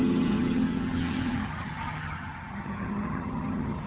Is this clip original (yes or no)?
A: no